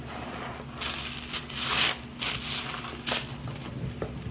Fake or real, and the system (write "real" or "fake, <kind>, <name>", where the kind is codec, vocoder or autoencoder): real